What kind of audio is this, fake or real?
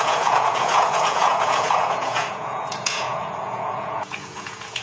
fake